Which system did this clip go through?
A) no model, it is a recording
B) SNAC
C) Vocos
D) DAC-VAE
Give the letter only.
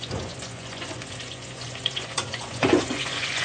C